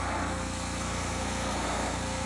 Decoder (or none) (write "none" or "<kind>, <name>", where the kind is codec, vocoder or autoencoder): codec, SNAC